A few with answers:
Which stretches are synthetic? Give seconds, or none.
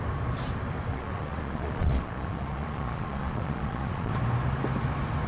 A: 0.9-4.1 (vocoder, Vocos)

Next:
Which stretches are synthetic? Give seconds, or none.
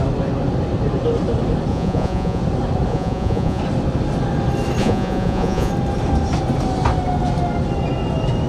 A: 1.7-2.4 (vocoder, Vocos); 2.9-3.6; 4.8-5.7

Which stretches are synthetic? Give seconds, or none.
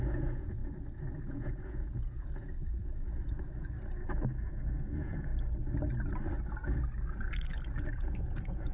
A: 0.0-0.6 (vocoder, Vocos); 1.2-2.6; 4.5-5.3; 7.9-8.7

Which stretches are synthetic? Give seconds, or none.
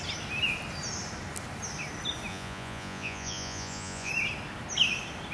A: 2.3-4.1 (vocoder, Vocos)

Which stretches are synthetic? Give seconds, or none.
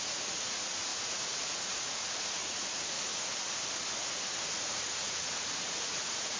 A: 0.0-3.1 (vocoder, Vocos); 4.0-6.4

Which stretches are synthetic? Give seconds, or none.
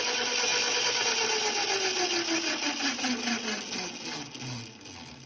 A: none